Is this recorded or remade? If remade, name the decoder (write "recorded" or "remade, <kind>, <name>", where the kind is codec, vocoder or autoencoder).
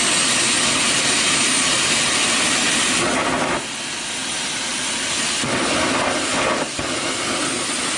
recorded